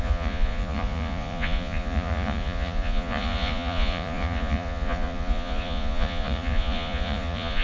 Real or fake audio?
fake